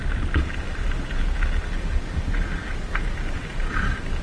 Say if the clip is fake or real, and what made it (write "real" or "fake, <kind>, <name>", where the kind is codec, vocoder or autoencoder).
real